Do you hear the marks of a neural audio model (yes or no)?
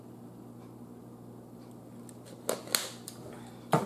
no